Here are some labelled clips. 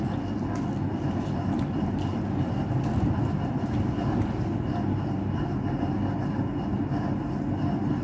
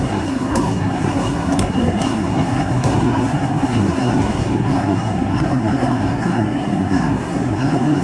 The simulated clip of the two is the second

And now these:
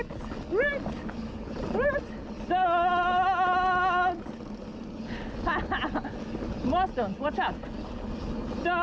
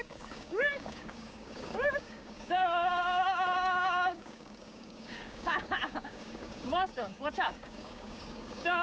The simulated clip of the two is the second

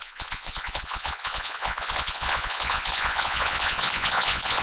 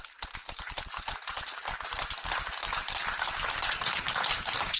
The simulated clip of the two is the first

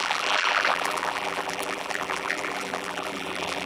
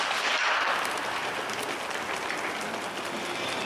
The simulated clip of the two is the first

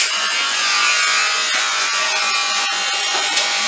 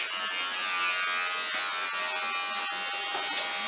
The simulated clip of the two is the first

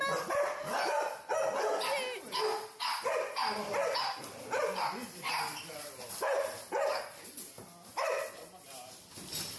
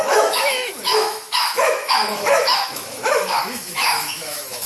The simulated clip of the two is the second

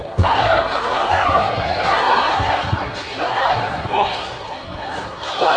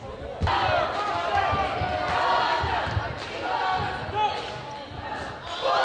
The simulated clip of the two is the first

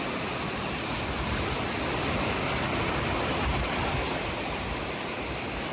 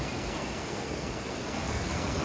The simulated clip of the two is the second